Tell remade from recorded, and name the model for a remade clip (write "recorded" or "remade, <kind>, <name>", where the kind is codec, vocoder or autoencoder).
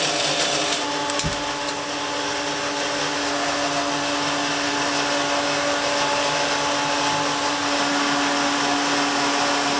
recorded